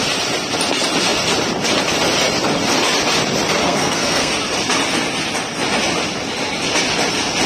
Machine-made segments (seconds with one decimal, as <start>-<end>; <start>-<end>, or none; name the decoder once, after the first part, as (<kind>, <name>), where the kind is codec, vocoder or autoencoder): 3.6-4.3 (codec, SNAC)